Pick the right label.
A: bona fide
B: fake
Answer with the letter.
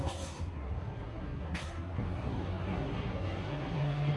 B